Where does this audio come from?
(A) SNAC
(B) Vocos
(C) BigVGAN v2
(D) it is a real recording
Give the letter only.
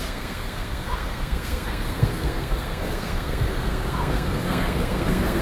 A